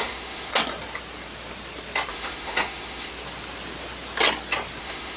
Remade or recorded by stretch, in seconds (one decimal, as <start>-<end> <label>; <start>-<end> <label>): 0.0-0.5 remade; 0.5-2.1 recorded; 2.1-3.1 remade; 3.1-4.8 recorded; 4.8-5.2 remade